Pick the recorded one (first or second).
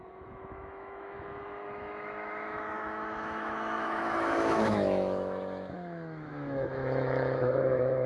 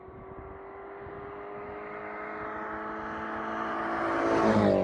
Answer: second